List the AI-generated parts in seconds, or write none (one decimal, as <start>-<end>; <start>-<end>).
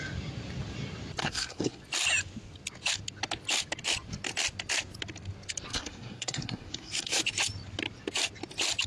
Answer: 1.2-1.8; 5.7-7.2